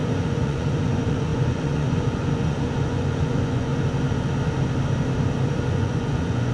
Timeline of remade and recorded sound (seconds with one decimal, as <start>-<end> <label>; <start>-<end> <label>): 0.0-3.7 remade; 3.7-5.7 recorded; 5.7-6.5 remade

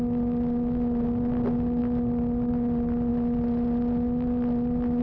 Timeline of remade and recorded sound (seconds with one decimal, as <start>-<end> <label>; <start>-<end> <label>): 0.0-5.0 recorded

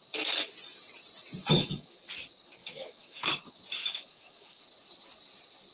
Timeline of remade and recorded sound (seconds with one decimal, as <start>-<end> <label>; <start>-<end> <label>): 0.0-1.4 recorded; 1.4-2.0 remade; 2.0-2.6 recorded; 2.6-3.3 remade; 3.3-3.8 recorded; 3.8-4.6 remade; 4.6-5.7 recorded

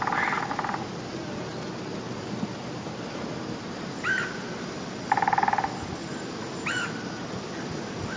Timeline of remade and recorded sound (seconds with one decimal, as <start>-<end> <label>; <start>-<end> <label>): 0.0-8.2 recorded

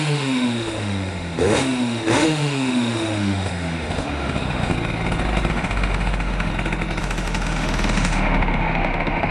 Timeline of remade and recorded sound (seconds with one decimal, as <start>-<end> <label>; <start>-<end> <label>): 0.0-4.7 remade; 4.7-5.5 recorded; 5.5-6.5 remade; 6.5-7.0 recorded; 7.0-9.3 remade

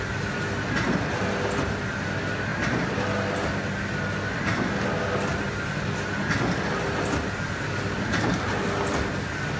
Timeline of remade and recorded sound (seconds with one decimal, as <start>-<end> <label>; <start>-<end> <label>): 0.0-9.6 recorded

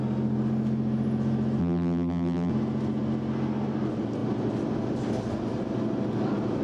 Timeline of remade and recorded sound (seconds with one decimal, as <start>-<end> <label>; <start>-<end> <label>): 0.0-1.6 recorded; 1.6-2.5 remade; 2.5-6.6 recorded